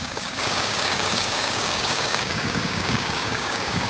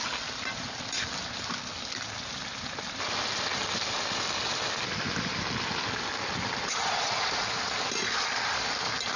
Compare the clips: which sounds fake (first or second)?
first